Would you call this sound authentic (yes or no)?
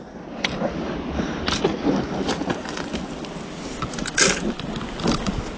yes